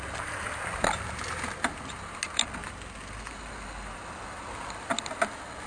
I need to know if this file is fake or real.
real